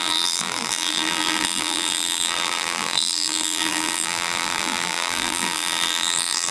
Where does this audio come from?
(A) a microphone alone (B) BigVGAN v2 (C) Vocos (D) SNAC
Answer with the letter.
B